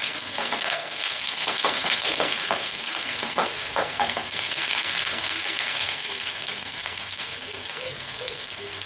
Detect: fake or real fake